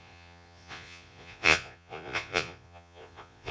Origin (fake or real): fake